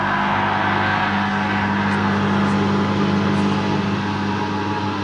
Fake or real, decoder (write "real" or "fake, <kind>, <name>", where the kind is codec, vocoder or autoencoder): real